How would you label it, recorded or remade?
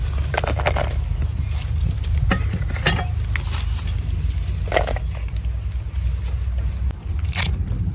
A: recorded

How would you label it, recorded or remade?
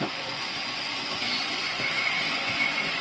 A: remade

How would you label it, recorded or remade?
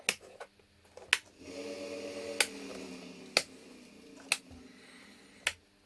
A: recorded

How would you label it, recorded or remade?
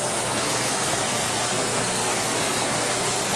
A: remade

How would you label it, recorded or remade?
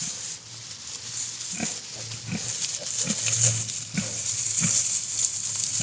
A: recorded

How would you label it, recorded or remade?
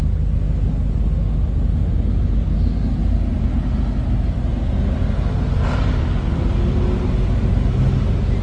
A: recorded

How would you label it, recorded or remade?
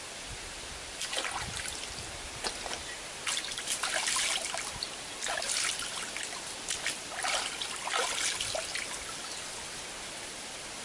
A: recorded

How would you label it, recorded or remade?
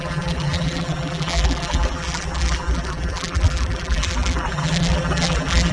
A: remade